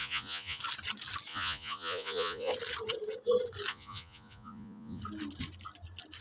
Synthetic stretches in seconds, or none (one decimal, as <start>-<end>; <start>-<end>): 0.0-0.6; 1.3-2.5; 3.7-5.0